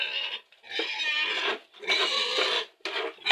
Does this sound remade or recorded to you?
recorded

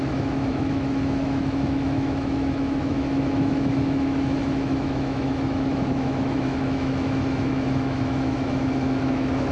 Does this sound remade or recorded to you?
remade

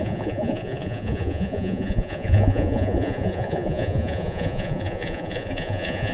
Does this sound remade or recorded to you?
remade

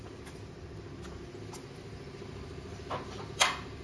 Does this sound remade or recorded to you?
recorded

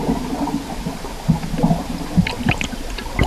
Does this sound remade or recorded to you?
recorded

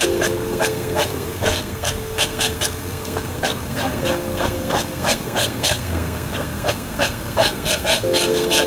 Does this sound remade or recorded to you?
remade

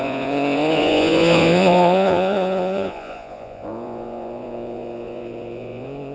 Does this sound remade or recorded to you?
remade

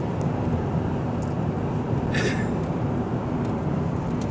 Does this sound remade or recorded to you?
recorded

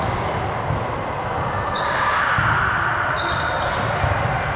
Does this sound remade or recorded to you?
recorded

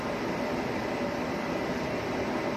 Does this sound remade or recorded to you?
remade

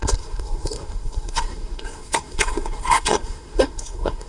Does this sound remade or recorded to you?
remade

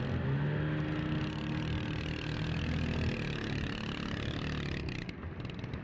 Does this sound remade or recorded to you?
recorded